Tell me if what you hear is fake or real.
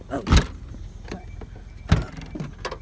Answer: real